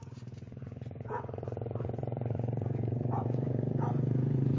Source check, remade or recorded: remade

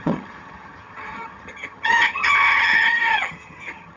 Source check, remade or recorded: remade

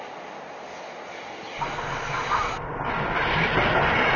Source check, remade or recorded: recorded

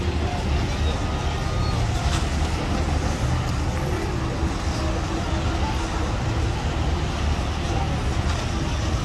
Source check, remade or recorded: recorded